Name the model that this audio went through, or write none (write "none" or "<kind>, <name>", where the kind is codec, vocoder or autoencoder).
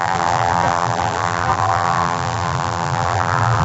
vocoder, BigVGAN v2